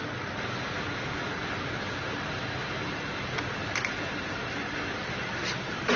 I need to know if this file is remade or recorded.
recorded